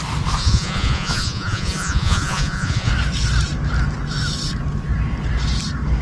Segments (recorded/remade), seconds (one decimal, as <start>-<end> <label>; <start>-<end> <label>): 0.0-0.4 recorded; 0.4-2.9 remade; 2.9-6.0 recorded